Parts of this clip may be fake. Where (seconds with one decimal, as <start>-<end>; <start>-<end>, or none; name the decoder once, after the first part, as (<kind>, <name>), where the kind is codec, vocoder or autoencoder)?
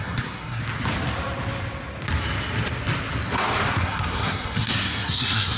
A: 0.0-0.6 (codec, SNAC); 3.7-5.6